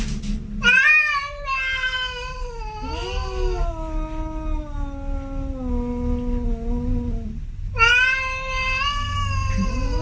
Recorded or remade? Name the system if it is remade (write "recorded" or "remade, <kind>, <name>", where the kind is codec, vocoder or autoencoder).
recorded